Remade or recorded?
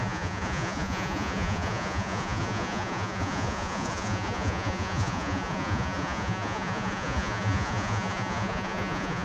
remade